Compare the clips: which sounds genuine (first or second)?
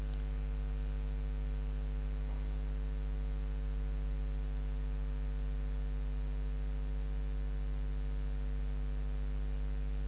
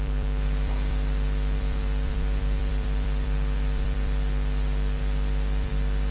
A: first